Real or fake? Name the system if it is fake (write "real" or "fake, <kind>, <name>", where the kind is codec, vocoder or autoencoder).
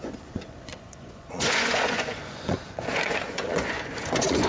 fake, vocoder, Vocos